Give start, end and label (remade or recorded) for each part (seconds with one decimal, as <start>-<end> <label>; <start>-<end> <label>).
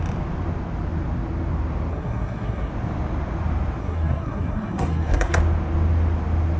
0.0-1.9 recorded; 1.9-2.7 remade; 2.7-3.8 recorded; 3.8-5.4 remade; 5.4-6.6 recorded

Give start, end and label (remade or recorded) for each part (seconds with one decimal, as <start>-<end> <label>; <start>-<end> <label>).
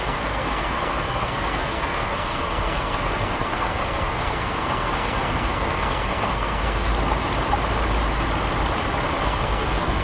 0.0-6.9 remade; 6.9-9.2 recorded; 9.2-10.0 remade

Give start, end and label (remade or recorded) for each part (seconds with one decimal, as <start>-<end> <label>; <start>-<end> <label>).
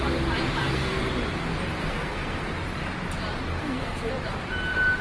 0.0-0.6 recorded; 0.6-1.1 remade; 1.1-1.8 recorded; 1.8-2.5 remade; 2.5-3.5 recorded; 3.5-4.1 remade; 4.1-5.0 recorded